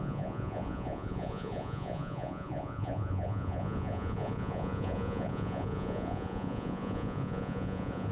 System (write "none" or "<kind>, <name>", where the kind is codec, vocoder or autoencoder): vocoder, Vocos